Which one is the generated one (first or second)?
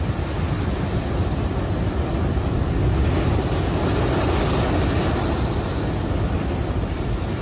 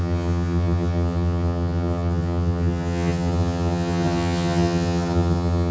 second